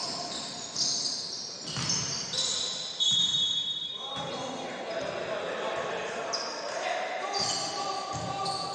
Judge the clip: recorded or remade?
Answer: recorded